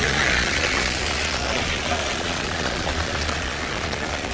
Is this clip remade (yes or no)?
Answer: yes